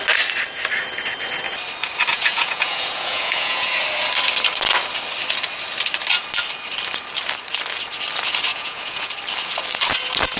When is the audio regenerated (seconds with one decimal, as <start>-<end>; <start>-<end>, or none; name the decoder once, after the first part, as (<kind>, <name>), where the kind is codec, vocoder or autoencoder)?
2.1-3.7 (vocoder, Vocos); 8.5-9.1